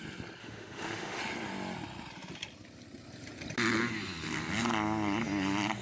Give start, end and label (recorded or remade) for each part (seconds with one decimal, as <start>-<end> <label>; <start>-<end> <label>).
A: 0.0-0.4 recorded; 0.4-1.2 remade; 1.2-5.8 recorded